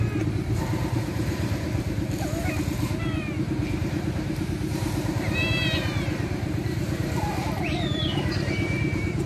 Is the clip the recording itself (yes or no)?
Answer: no